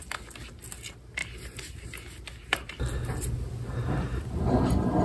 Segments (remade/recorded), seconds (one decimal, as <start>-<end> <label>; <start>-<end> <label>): 0.0-5.0 recorded